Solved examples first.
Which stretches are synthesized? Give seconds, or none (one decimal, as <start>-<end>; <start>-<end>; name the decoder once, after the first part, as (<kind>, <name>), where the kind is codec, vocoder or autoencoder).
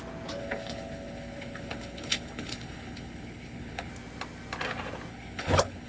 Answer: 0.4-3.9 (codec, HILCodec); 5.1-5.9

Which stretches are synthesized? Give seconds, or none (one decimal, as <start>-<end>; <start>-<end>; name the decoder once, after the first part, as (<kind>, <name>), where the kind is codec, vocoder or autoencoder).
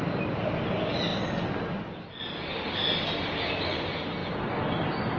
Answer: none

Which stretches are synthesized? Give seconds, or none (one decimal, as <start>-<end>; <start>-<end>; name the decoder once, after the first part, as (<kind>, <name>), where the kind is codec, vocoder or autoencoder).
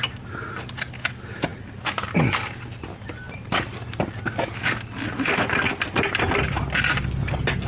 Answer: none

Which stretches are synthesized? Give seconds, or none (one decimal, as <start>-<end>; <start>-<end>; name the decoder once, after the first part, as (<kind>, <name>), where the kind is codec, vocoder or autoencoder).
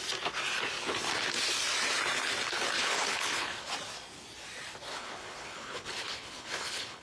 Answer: 2.8-3.7 (codec, HILCodec); 4.9-7.0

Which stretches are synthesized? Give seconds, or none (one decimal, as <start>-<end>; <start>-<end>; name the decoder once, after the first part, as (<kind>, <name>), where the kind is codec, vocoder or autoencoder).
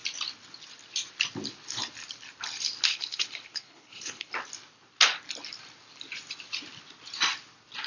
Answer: 2.9-4.3 (codec, HILCodec)